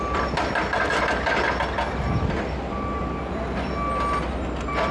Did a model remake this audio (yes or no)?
no